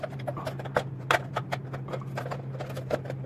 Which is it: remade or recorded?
recorded